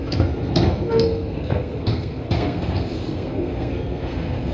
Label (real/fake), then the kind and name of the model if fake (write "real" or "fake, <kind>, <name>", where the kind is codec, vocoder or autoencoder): fake, codec, SNAC